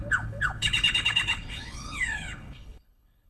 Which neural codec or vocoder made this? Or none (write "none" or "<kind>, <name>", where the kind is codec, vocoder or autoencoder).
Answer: codec, HILCodec